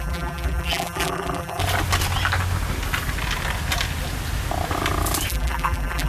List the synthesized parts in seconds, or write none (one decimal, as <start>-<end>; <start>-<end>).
0.0-1.6; 5.3-6.1